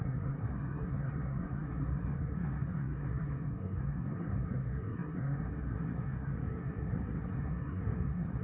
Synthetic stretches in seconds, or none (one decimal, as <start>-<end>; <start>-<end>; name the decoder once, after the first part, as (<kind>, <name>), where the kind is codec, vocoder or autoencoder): 0.0-8.4 (codec, SNAC)